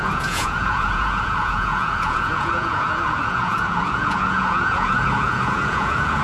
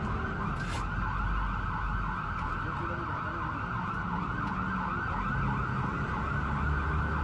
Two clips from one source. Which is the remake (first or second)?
first